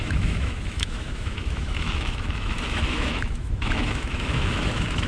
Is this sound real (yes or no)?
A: no